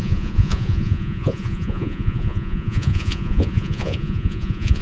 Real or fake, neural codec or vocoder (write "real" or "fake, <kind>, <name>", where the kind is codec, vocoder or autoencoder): fake, vocoder, Vocos